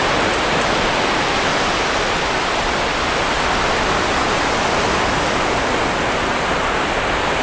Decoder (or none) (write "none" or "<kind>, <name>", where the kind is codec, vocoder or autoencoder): none